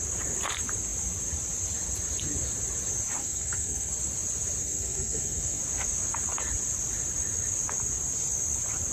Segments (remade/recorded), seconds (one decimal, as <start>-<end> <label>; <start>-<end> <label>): 0.0-3.2 recorded; 3.2-3.9 remade; 3.9-4.6 recorded; 4.6-5.6 remade; 5.6-8.9 recorded